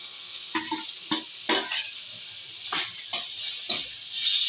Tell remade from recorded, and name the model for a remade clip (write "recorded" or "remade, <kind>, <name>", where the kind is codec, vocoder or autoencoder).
recorded